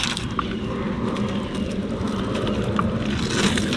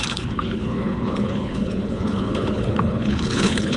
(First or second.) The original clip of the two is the first